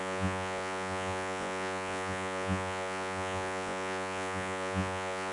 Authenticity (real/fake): fake